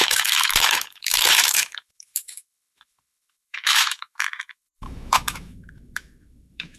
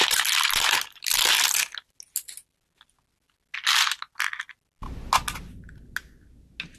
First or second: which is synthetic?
first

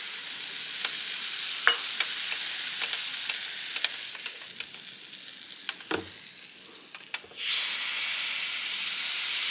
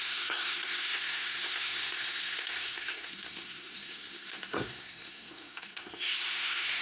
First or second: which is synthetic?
second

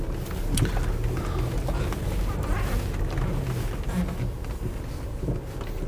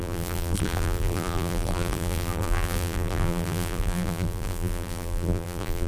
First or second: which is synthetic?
second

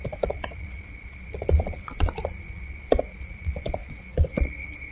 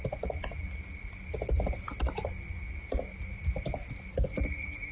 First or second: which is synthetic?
first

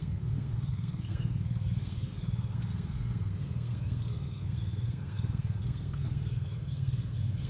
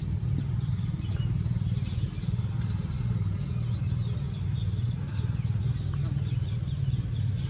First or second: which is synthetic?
first